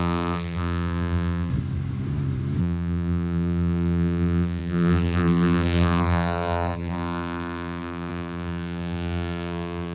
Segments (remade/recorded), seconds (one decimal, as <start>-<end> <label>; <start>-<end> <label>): 0.0-1.5 remade; 1.5-2.6 recorded; 2.6-9.9 remade